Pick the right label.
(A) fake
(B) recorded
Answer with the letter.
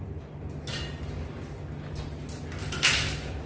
B